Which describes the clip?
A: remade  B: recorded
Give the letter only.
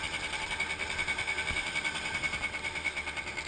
B